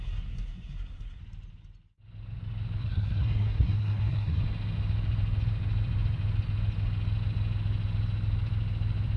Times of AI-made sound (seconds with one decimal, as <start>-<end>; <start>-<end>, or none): 0.0-1.2; 2.8-4.4